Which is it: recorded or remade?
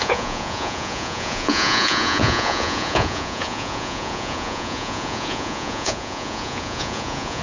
remade